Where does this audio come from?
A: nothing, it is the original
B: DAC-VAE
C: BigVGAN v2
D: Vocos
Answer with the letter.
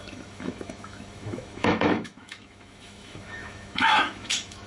B